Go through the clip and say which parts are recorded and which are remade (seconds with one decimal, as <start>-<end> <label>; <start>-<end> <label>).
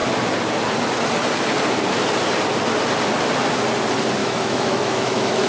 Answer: 0.0-4.2 recorded; 4.2-5.5 remade